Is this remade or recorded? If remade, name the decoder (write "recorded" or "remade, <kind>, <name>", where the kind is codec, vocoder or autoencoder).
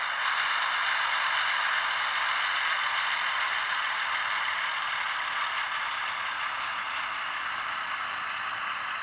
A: remade, vocoder, BigVGAN v2